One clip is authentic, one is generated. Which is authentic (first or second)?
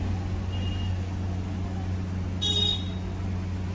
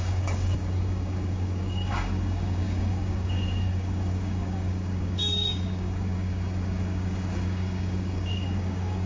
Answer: first